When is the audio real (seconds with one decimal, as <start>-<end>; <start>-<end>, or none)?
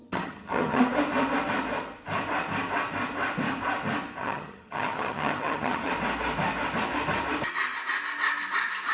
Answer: 0.8-4.2; 5.9-8.9